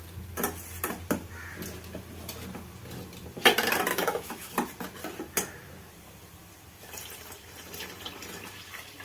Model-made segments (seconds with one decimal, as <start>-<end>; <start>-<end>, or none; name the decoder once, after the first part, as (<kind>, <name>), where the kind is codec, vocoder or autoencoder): 3.9-4.5 (autoencoder, DAC-VAE)